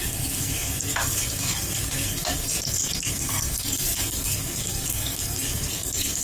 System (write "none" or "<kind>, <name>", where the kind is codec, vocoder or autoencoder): codec, SNAC